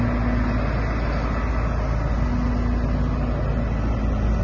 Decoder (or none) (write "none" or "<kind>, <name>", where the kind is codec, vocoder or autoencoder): none